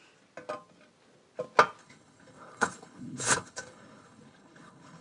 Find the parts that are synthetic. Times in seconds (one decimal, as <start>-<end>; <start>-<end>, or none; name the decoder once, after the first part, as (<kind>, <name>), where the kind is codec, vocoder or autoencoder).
1.8-5.0 (codec, HILCodec)